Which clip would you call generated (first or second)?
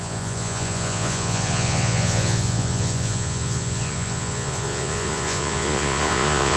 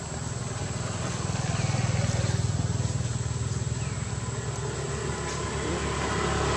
first